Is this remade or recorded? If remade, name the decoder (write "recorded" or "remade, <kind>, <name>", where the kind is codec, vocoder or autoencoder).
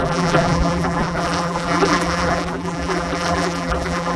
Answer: remade, vocoder, BigVGAN v2